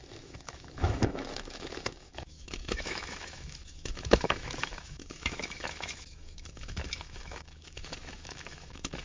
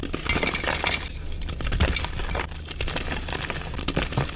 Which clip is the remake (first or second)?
first